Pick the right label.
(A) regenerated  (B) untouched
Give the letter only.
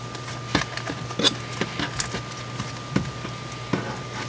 B